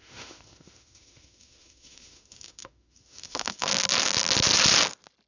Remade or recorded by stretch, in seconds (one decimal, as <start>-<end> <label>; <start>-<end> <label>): 0.0-3.7 remade; 3.7-5.3 recorded